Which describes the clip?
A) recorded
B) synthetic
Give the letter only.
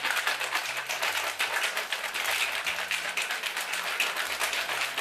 A